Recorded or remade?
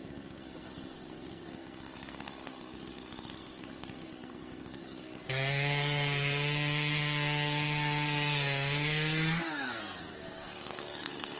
remade